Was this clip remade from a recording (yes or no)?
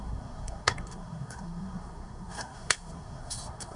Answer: yes